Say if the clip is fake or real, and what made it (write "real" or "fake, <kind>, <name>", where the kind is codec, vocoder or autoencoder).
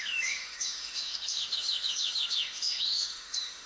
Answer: fake, autoencoder, DAC-VAE